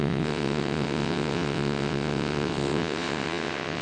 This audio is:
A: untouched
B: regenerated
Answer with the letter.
B